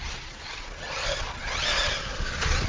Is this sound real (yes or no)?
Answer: no